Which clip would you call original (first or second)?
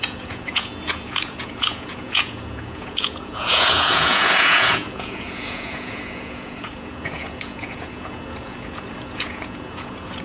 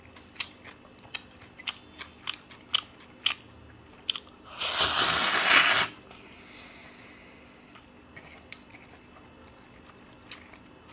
second